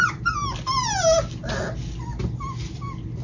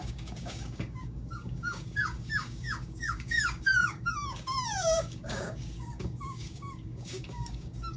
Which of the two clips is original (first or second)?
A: first